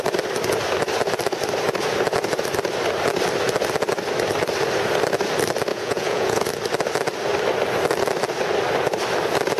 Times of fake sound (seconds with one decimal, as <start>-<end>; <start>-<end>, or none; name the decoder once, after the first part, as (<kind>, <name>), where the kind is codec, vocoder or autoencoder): 5.7-6.4 (vocoder, Vocos)